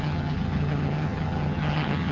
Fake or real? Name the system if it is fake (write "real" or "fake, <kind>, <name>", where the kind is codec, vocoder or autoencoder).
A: fake, vocoder, HiFi-GAN